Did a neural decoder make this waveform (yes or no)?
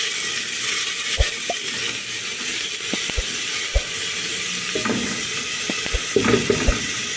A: no